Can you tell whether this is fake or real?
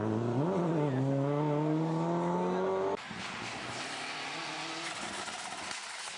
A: real